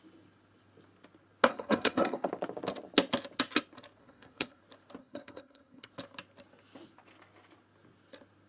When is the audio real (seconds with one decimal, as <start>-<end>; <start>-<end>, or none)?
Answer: 0.0-1.5; 2.3-4.0; 4.6-5.0; 5.9-8.5

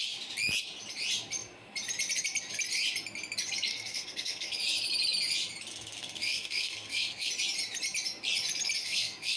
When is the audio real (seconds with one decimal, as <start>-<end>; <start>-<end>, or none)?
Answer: 0.0-3.7; 4.6-5.7; 7.3-8.8

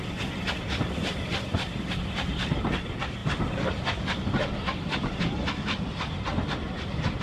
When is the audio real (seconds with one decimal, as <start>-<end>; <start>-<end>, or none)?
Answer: 0.0-7.2